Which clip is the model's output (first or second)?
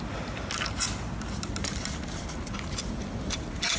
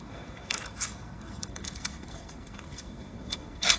second